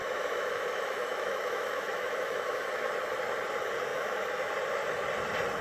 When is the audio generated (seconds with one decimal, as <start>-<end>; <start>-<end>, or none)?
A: 0.0-2.9; 3.9-4.5